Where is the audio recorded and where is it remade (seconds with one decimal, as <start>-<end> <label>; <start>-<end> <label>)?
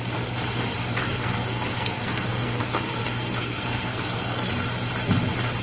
0.0-1.1 recorded; 1.1-4.5 remade; 4.5-5.6 recorded